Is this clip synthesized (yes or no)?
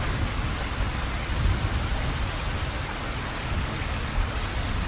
no